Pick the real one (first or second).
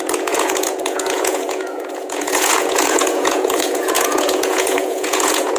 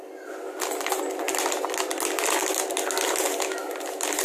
second